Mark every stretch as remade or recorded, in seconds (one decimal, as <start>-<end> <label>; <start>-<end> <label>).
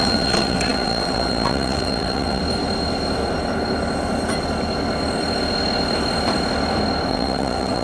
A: 0.0-2.4 remade; 2.4-7.1 recorded; 7.1-7.8 remade